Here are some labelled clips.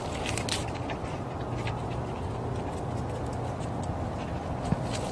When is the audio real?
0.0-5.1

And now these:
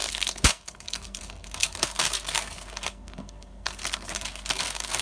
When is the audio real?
none

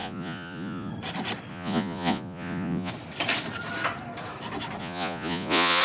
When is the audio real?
0.9-1.5; 2.9-4.8

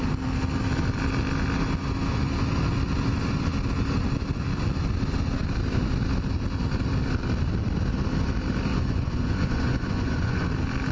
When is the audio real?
0.0-8.7; 10.5-10.9

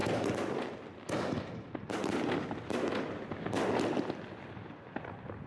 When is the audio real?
0.0-5.5

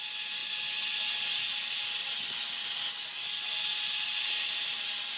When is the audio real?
0.0-5.2

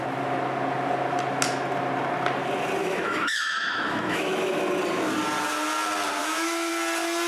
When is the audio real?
0.0-2.8; 4.6-6.2; 6.7-7.3